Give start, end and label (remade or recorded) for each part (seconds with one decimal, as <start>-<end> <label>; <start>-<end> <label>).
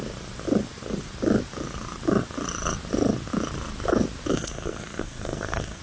0.0-4.3 recorded; 4.3-5.8 remade